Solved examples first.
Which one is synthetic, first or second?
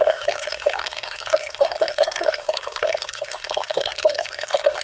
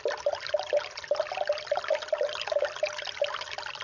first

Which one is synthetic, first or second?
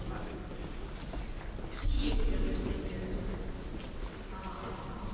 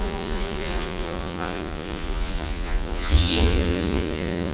second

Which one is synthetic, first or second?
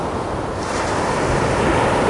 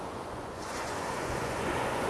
second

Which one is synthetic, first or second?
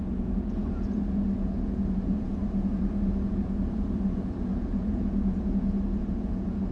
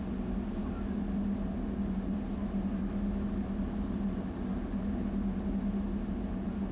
first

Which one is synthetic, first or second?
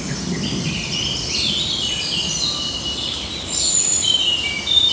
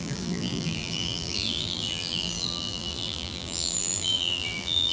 second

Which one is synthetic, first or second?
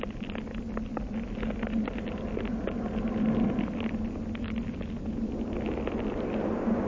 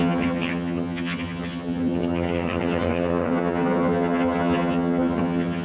second